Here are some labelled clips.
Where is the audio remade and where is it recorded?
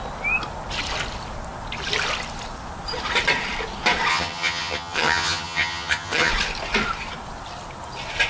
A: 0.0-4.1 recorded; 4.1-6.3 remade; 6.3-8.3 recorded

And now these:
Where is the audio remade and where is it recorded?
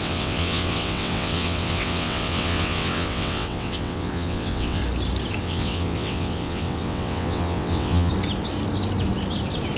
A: 0.0-4.8 remade; 4.8-5.4 recorded; 5.4-8.1 remade; 8.1-9.8 recorded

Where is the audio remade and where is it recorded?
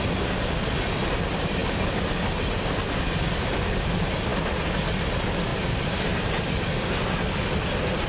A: 0.0-8.1 recorded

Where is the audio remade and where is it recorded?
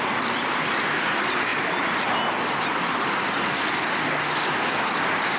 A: 0.0-5.4 recorded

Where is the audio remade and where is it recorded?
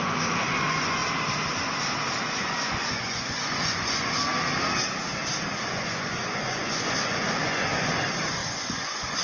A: 0.0-1.0 remade; 1.0-2.2 recorded; 2.2-4.3 remade; 4.3-5.6 recorded; 5.6-9.2 remade